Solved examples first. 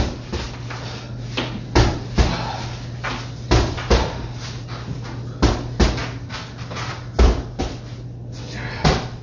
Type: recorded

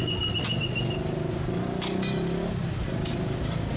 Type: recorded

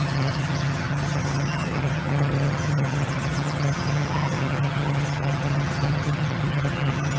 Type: remade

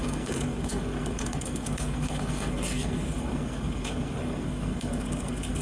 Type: remade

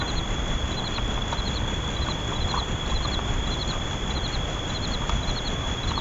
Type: remade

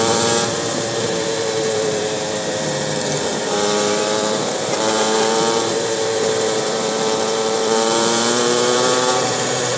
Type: remade